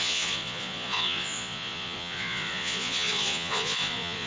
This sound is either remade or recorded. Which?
remade